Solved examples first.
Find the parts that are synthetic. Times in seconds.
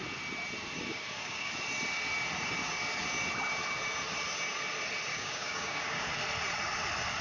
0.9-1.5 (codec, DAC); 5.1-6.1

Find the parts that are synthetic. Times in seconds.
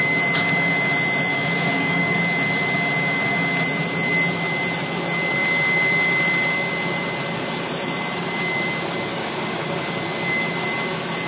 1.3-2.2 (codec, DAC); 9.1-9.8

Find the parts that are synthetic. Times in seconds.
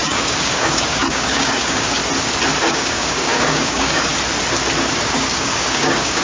0.0-2.0 (codec, DAC); 2.6-4.1; 4.9-6.2